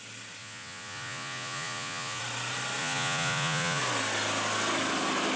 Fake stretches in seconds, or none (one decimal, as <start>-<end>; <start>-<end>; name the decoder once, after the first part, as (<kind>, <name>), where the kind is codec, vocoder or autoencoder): 0.4-2.2 (vocoder, Vocos); 2.8-3.8